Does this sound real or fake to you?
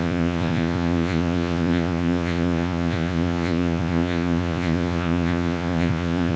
fake